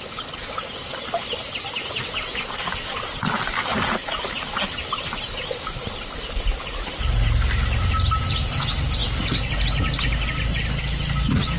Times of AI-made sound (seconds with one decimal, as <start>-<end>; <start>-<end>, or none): none